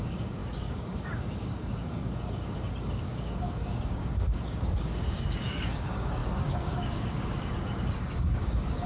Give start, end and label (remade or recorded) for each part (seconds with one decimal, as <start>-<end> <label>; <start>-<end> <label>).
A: 0.0-8.9 remade